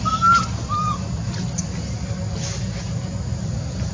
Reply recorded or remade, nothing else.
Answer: recorded